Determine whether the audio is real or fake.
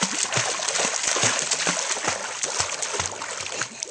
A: real